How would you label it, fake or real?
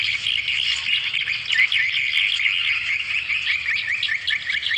real